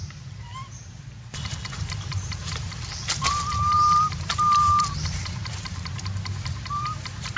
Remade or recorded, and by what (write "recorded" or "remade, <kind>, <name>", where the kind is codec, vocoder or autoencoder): remade, vocoder, BigVGAN v2